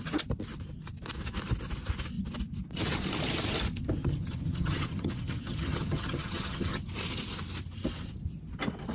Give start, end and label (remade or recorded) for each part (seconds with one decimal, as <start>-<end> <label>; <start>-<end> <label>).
0.0-4.0 recorded; 4.0-6.8 remade; 6.8-8.9 recorded